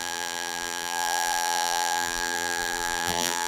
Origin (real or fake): fake